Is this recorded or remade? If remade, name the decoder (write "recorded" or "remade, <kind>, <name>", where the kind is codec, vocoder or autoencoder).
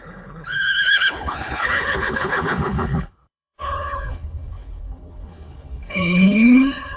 remade, codec, HILCodec